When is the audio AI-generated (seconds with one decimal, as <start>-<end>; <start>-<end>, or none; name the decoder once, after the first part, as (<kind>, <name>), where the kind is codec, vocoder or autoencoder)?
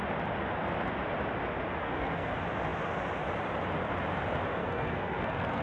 1.8-2.3 (codec, SNAC); 4.6-5.6